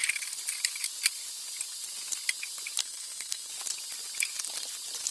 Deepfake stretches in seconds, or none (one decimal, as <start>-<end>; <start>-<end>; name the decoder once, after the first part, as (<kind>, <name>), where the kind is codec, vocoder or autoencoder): 2.8-3.5 (codec, SNAC)